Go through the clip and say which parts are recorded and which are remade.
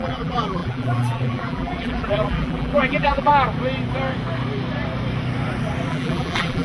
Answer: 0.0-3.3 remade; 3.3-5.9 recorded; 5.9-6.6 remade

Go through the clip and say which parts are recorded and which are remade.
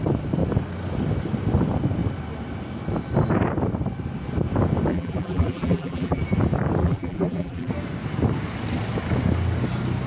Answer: 0.0-4.9 recorded; 4.9-6.2 remade; 6.2-6.8 recorded; 6.8-7.7 remade; 7.7-10.1 recorded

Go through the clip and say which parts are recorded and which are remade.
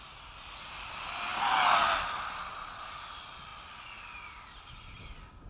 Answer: 0.0-5.5 recorded